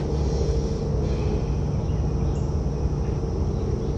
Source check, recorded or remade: recorded